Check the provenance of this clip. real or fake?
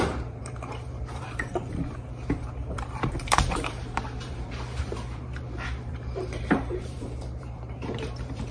fake